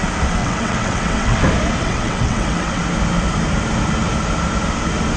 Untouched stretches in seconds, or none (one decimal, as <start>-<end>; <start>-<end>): 0.0-0.4; 1.4-1.8; 2.8-5.2